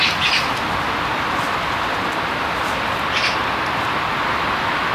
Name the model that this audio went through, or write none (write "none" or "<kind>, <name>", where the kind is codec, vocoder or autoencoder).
none